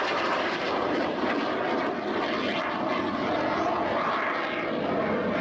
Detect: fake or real real